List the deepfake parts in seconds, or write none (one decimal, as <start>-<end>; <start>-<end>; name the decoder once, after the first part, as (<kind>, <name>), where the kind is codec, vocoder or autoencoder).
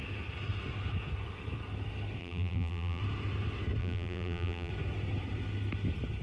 2.2-3.0 (vocoder, BigVGAN v2); 3.8-4.7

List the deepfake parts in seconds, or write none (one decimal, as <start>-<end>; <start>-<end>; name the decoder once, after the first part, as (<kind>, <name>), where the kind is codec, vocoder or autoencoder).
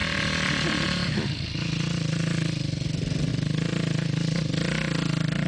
none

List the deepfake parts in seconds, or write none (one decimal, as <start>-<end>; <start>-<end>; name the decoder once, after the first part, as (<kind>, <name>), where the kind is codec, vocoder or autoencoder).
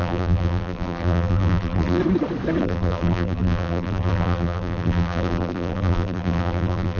0.0-2.0 (vocoder, BigVGAN v2); 2.6-7.0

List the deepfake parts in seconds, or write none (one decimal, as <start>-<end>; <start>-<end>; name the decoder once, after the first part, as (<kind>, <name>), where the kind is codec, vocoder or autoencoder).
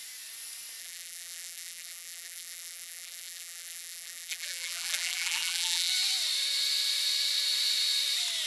0.8-5.9 (vocoder, BigVGAN v2)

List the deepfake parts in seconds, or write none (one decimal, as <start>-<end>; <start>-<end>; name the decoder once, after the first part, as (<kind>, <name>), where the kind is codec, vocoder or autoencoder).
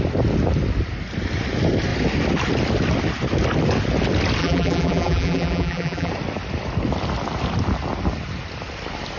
4.4-6.1 (vocoder, BigVGAN v2)